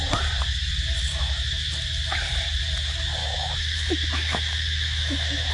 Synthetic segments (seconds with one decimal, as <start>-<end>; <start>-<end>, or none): 1.1-1.7; 3.2-5.5